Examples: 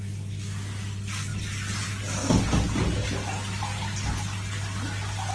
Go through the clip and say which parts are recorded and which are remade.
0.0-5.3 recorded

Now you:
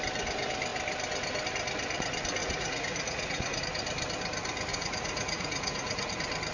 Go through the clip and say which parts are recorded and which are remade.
0.0-2.4 recorded; 2.4-3.6 remade; 3.6-4.7 recorded; 4.7-6.1 remade; 6.1-6.5 recorded